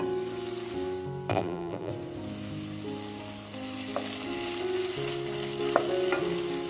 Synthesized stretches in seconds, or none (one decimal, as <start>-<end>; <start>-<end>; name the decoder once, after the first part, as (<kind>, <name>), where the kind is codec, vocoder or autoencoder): 1.3-1.9 (vocoder, BigVGAN v2)